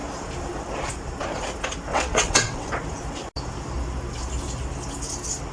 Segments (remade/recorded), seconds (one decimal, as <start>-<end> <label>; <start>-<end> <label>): 0.0-1.9 recorded; 1.9-2.7 remade; 2.7-5.5 recorded